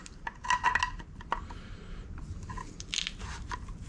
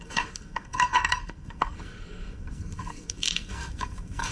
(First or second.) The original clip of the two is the first